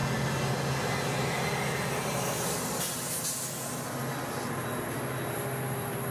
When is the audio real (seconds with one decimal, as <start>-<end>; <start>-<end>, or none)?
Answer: 0.0-6.1